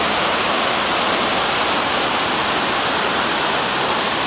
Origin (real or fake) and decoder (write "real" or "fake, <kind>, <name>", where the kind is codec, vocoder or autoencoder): real